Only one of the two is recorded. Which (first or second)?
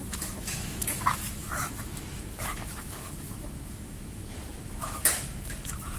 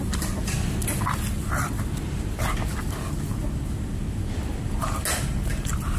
second